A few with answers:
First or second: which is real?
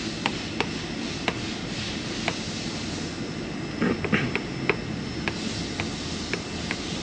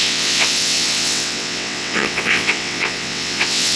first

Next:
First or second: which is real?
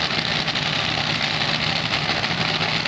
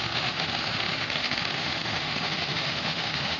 first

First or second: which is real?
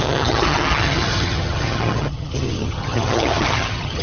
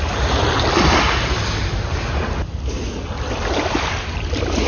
second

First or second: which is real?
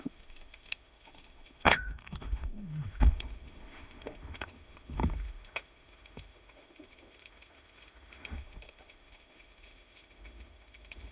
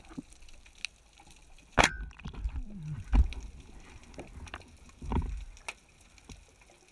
second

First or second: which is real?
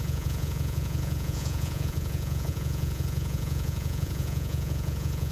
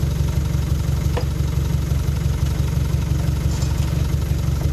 second